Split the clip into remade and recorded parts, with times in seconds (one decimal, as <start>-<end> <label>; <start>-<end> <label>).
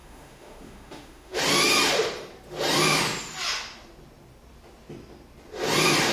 0.0-1.4 remade; 1.4-6.1 recorded